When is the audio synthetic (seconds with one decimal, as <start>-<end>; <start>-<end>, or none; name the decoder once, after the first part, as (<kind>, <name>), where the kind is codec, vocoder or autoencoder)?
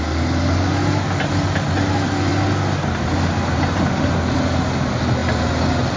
none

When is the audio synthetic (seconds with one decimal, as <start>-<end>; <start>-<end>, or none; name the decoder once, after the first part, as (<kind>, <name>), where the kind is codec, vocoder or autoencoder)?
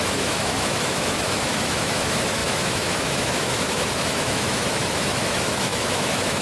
0.0-6.4 (autoencoder, DAC-VAE)